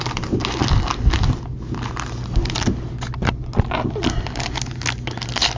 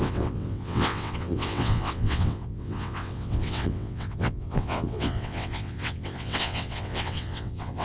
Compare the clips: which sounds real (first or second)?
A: first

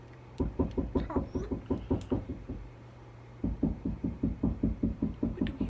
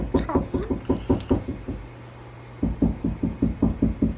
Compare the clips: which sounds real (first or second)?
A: second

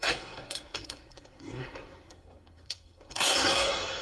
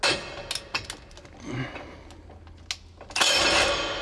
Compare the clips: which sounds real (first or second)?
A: second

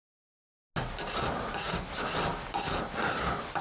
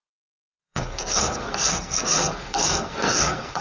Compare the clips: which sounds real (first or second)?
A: first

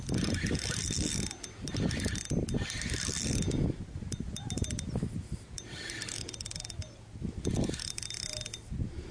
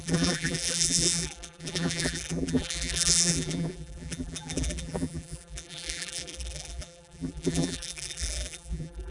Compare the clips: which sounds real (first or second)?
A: first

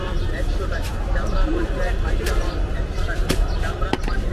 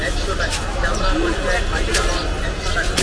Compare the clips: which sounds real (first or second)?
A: second